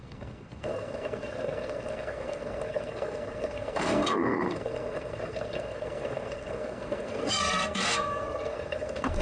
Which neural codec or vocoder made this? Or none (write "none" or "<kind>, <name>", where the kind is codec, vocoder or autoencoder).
codec, SNAC